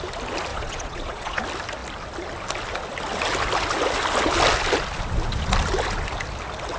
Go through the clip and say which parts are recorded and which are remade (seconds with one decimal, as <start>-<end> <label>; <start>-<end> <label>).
0.0-0.5 recorded; 0.5-1.4 remade; 1.4-6.8 recorded